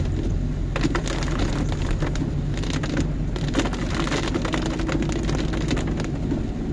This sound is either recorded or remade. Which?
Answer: recorded